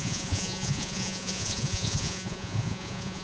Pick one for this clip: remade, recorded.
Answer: remade